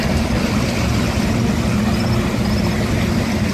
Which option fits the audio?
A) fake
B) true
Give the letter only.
A